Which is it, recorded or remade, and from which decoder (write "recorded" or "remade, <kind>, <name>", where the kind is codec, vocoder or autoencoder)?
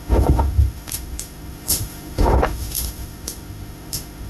remade, autoencoder, DAC-VAE